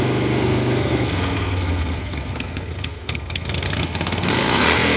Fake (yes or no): yes